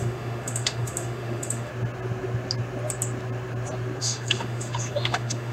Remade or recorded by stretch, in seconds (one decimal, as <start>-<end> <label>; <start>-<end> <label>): 0.0-1.7 remade; 1.7-4.0 recorded; 4.0-5.5 remade